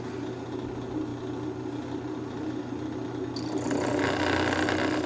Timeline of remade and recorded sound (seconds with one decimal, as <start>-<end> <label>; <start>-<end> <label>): 0.0-5.1 recorded